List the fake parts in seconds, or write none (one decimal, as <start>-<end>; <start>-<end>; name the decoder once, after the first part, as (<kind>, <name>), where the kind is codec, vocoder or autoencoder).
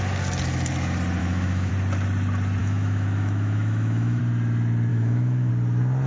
1.2-1.7 (autoencoder, DAC-VAE); 2.6-4.2; 4.9-5.5